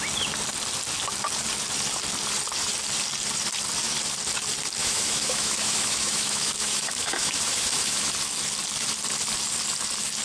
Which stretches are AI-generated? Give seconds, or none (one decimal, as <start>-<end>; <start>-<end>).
4.8-8.1